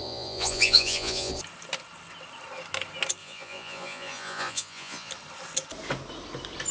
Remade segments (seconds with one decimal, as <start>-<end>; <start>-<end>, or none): 0.0-1.3; 3.2-5.1